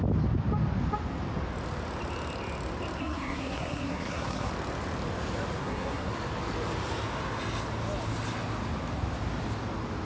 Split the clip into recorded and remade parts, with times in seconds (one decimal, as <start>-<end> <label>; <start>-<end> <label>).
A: 0.0-3.0 recorded; 3.0-4.5 remade; 4.5-5.6 recorded; 5.6-6.1 remade; 6.1-10.0 recorded